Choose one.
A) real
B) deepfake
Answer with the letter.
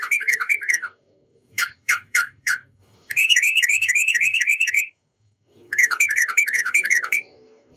B